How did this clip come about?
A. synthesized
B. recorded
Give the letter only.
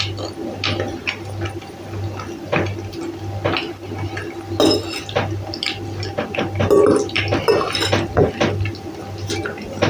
B